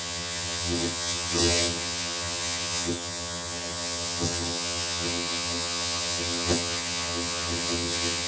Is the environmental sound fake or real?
fake